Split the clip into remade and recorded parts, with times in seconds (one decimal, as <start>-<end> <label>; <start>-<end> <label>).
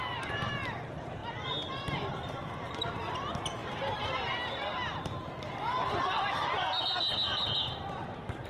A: 0.0-1.2 remade; 1.2-1.8 recorded; 1.8-8.5 remade